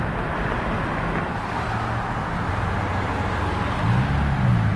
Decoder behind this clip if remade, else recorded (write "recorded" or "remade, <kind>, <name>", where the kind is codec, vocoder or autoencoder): recorded